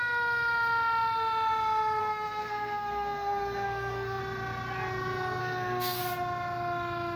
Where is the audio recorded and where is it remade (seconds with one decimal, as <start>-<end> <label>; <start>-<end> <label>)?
0.0-2.0 recorded; 2.0-4.2 remade; 4.2-5.4 recorded; 5.4-6.0 remade; 6.0-7.2 recorded